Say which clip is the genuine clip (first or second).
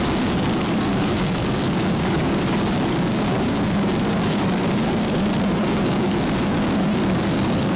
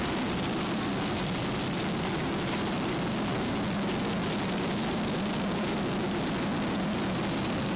second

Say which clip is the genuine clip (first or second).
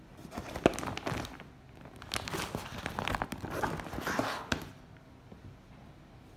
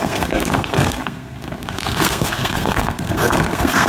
first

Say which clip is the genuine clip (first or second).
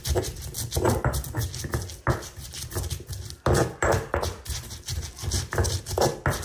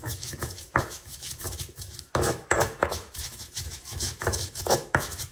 first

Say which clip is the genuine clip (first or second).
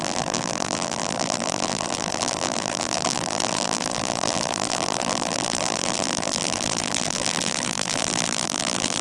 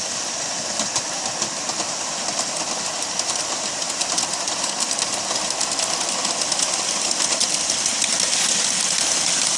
second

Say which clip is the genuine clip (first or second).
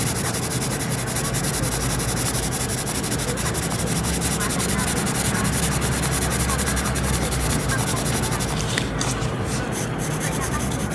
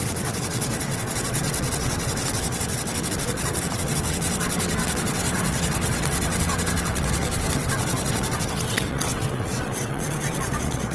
first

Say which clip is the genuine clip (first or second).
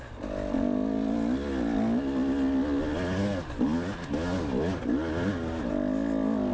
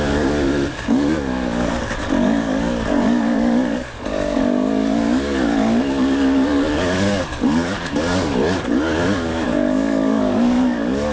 first